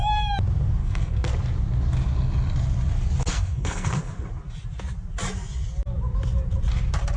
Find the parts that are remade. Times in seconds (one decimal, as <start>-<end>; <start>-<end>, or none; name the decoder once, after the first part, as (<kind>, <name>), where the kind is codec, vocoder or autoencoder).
0.8-1.3 (codec, SNAC); 3.3-4.3